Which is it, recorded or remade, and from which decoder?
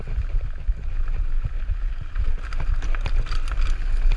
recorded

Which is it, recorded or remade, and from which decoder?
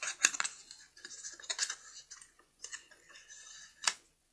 remade, vocoder, Vocos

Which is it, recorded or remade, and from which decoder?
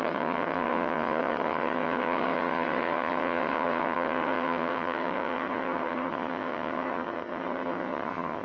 remade, vocoder, HiFi-GAN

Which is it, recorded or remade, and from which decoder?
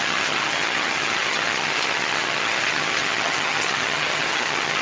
remade, vocoder, HiFi-GAN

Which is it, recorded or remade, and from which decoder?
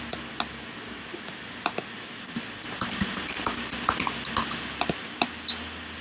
recorded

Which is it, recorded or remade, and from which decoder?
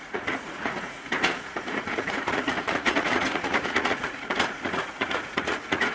remade, vocoder, Vocos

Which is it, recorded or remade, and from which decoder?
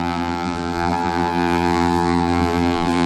remade, vocoder, BigVGAN v2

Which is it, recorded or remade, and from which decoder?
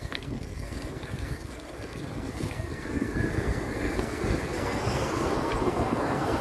remade, codec, SNAC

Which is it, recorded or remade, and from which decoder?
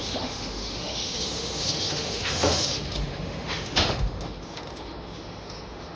remade, autoencoder, DAC-VAE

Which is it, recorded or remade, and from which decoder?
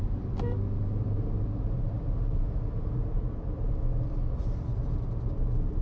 recorded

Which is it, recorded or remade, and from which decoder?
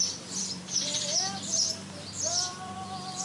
remade, vocoder, BigVGAN v2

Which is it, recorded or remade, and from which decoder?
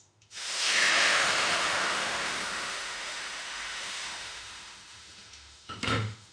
remade, autoencoder, DAC-VAE